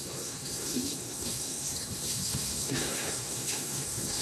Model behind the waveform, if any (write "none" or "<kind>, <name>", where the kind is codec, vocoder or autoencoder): codec, SNAC